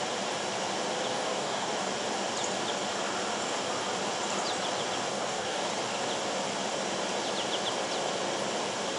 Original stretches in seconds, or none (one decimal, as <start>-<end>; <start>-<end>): 0.0-1.1; 1.7-5.1; 5.7-9.0